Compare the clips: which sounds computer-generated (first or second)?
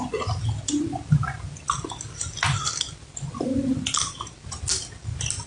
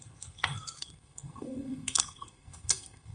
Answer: second